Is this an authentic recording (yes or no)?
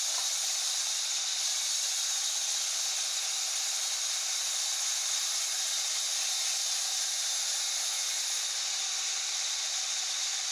yes